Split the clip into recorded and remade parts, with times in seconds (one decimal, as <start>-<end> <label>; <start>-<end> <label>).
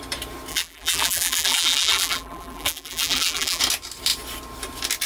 0.0-0.5 recorded; 0.5-3.6 remade; 3.6-5.1 recorded